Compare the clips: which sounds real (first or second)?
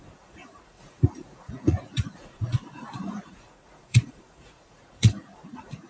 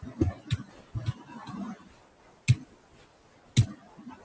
second